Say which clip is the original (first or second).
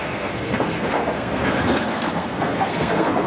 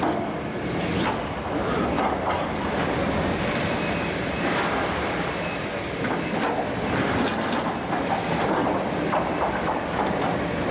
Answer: second